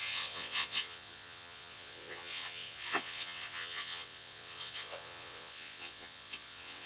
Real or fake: fake